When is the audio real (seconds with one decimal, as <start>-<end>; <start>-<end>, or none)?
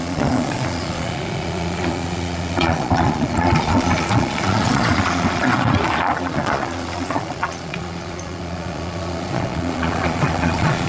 none